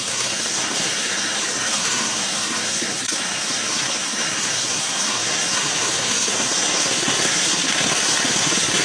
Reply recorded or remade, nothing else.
remade